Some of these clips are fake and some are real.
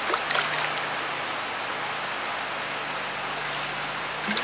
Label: real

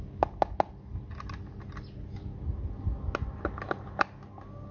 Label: real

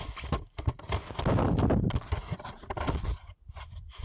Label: real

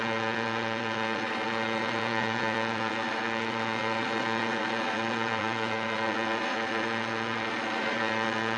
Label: fake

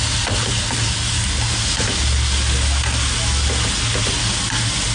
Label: real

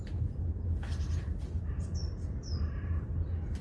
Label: real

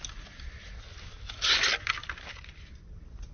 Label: real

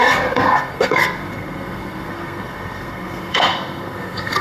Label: fake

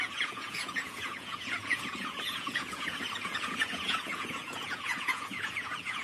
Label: fake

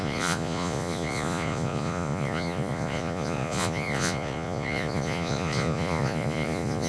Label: fake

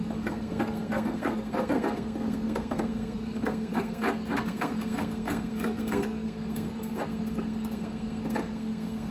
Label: fake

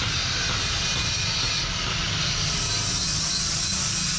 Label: real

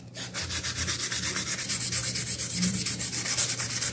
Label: real